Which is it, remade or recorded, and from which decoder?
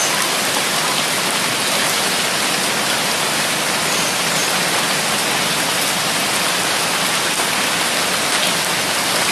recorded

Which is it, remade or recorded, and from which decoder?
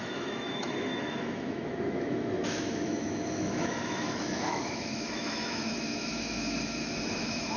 remade, autoencoder, DAC-VAE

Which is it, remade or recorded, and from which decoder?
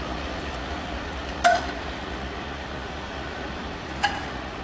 remade, vocoder, Vocos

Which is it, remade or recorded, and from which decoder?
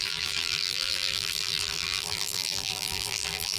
remade, vocoder, BigVGAN v2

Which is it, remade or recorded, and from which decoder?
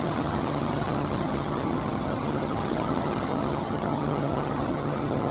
remade, vocoder, HiFi-GAN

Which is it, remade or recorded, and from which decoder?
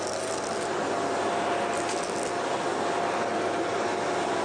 recorded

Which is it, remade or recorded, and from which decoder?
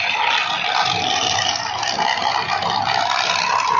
recorded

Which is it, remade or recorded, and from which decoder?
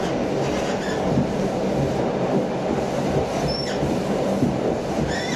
recorded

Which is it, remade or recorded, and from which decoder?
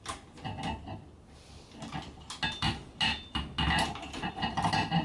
recorded